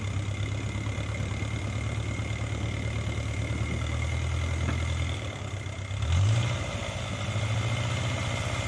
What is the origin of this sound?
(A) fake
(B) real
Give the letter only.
B